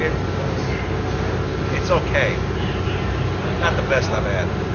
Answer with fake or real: real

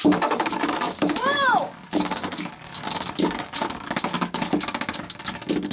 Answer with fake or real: fake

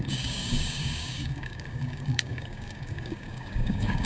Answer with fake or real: fake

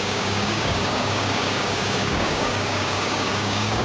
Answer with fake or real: fake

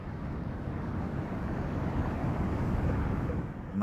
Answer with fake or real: fake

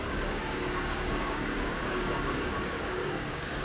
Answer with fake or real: fake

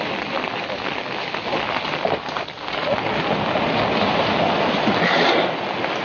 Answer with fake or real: real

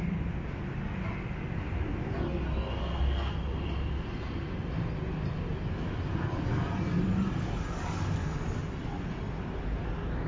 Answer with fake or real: real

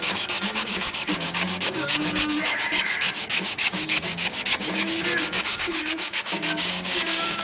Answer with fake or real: fake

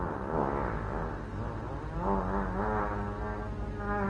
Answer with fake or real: real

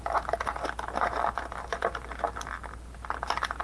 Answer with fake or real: real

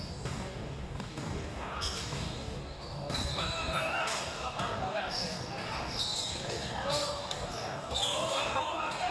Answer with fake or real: fake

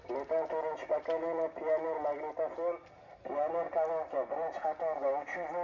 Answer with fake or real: real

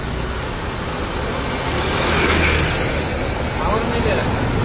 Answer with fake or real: real